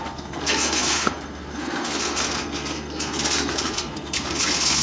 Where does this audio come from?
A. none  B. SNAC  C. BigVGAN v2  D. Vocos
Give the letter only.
B